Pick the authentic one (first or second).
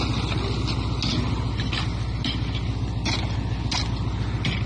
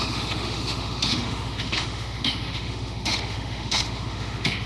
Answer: first